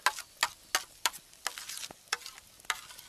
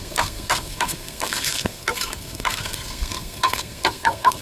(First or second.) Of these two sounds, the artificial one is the second